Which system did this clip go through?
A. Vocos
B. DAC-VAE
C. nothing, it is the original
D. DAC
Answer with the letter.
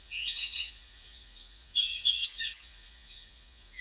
A